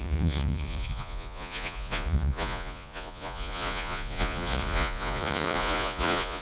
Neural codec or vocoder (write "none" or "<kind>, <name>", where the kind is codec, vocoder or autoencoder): vocoder, Vocos